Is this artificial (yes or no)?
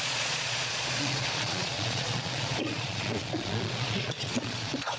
yes